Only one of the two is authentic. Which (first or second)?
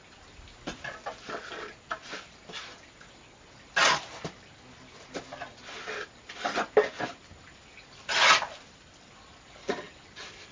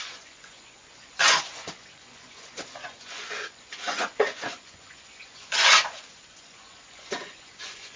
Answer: first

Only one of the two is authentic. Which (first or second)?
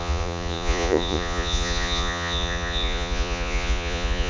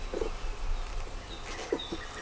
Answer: second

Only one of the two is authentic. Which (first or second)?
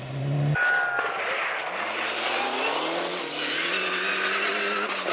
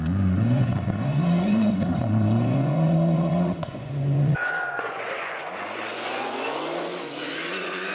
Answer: first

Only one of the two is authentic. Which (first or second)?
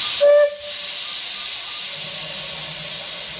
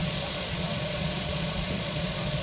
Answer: first